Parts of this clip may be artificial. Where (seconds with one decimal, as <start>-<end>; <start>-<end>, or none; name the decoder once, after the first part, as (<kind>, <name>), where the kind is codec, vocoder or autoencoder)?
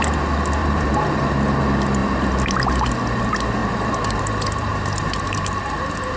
0.6-1.6 (vocoder, BigVGAN v2); 3.6-6.2